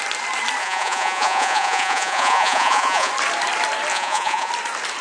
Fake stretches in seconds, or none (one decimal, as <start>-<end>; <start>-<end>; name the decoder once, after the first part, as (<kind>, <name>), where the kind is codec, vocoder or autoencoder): 0.6-3.1 (vocoder, Vocos); 3.9-4.5